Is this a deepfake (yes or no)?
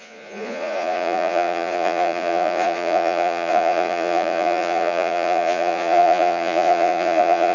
yes